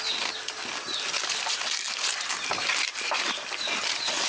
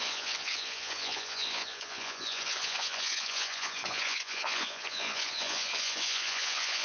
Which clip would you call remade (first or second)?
second